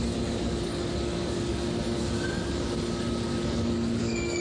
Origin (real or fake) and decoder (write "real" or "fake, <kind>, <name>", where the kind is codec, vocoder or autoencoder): fake, codec, DAC